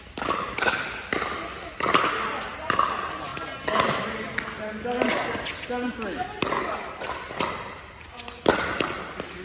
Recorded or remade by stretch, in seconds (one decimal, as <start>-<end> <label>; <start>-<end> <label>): 0.0-9.4 recorded